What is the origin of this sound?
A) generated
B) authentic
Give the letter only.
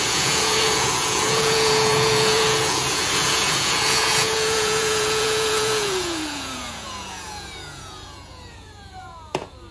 A